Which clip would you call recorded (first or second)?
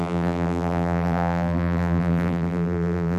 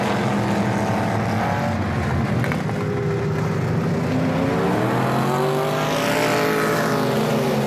second